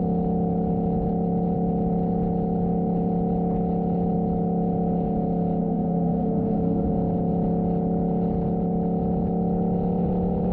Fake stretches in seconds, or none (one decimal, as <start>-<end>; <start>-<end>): 5.6-6.9